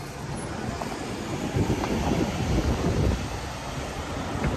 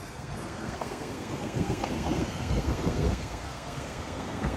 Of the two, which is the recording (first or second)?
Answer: first